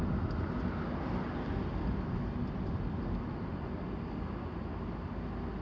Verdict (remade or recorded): recorded